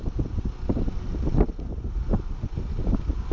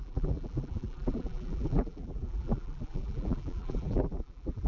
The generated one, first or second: second